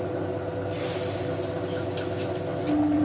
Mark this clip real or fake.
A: real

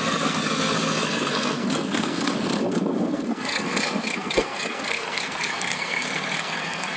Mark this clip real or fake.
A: fake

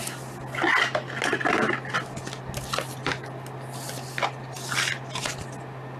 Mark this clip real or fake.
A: real